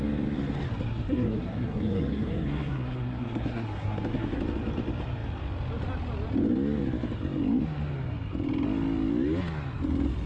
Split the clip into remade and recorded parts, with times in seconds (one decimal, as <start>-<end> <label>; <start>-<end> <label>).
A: 0.0-0.9 recorded; 0.9-4.4 remade; 4.4-10.3 recorded